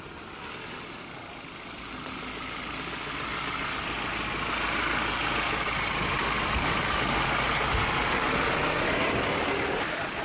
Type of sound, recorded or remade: recorded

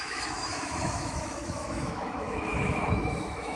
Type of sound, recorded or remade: remade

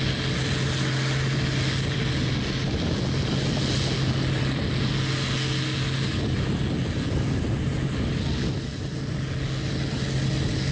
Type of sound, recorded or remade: recorded